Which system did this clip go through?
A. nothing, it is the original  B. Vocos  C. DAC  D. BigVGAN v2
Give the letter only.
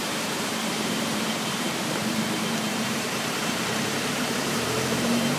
D